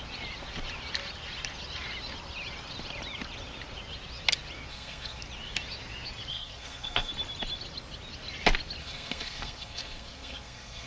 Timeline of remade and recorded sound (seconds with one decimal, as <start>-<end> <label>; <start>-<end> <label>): 0.0-4.7 recorded; 4.7-5.2 remade; 5.2-6.3 recorded; 6.3-7.1 remade; 7.1-8.8 recorded; 8.8-10.9 remade